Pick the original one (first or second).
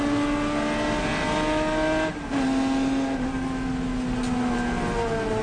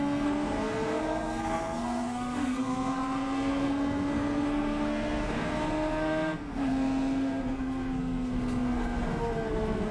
first